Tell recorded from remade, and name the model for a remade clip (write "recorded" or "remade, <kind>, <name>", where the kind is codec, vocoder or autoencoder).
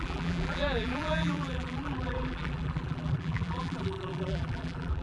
remade, vocoder, BigVGAN v2